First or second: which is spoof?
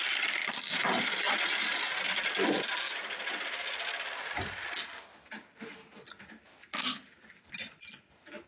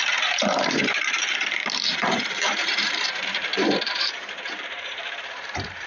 second